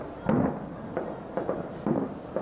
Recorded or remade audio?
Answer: recorded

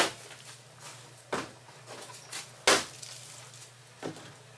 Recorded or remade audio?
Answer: recorded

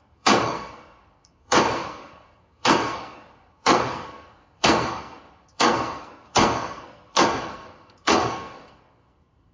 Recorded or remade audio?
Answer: remade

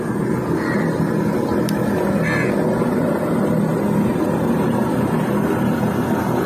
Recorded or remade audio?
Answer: recorded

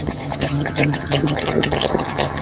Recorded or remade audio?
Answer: remade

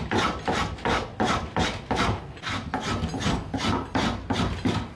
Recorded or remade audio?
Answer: recorded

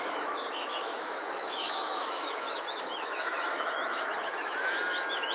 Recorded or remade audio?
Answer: remade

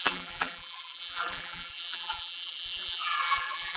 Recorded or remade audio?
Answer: remade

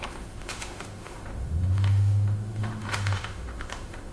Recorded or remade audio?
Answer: remade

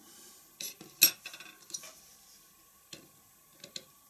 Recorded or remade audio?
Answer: recorded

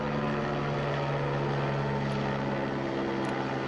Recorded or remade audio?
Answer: recorded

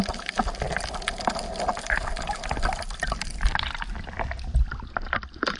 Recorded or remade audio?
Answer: recorded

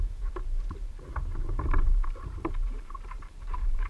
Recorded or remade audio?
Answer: remade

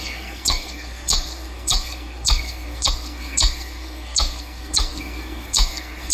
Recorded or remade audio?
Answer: remade